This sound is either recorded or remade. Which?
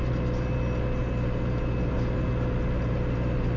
recorded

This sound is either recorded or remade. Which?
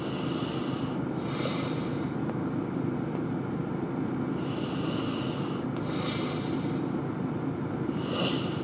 recorded